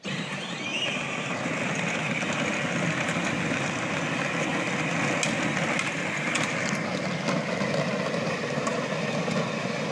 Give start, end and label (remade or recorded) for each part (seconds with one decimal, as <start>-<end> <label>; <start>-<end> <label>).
0.0-9.9 recorded